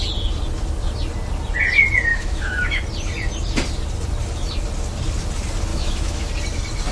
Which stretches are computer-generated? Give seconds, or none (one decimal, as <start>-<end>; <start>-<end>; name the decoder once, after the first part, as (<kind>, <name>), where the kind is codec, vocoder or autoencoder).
2.1-2.8 (autoencoder, DAC-VAE); 5.7-6.3